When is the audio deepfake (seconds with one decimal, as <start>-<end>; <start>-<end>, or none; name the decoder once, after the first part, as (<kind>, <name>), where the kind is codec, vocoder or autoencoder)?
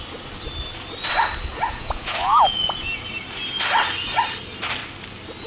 1.5-3.0 (vocoder, Vocos)